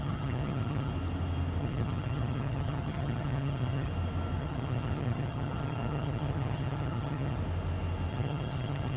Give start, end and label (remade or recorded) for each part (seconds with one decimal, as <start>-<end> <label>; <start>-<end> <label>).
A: 0.0-0.9 remade; 0.9-1.6 recorded; 1.6-3.9 remade; 3.9-4.4 recorded; 4.4-7.4 remade; 7.4-8.1 recorded; 8.1-9.0 remade